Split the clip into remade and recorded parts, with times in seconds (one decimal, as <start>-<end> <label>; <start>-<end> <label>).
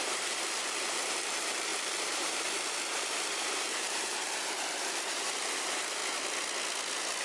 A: 0.0-6.0 remade; 6.0-7.2 recorded